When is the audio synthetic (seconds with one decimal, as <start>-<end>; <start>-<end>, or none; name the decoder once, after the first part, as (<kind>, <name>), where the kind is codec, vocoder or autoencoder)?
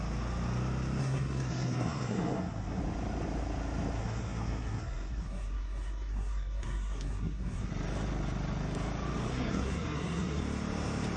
1.0-2.8 (codec, SNAC); 4.0-7.7; 9.3-10.4